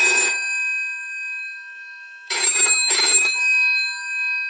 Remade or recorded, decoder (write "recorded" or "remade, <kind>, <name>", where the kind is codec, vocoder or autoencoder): remade, autoencoder, DAC-VAE